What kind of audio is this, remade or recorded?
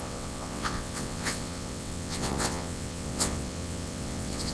remade